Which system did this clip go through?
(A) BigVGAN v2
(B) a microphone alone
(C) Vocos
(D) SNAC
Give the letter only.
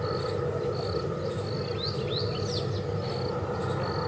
B